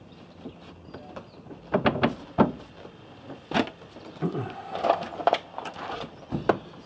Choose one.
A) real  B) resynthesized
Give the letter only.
A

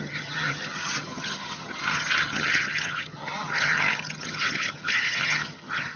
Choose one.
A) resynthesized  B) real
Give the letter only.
A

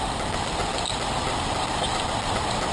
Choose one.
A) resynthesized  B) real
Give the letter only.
B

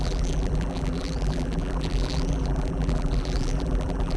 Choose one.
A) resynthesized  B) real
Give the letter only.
A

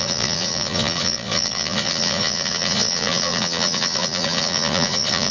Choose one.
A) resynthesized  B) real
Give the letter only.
A